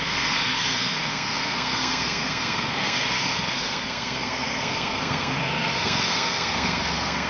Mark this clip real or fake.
fake